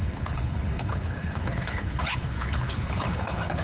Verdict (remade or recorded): remade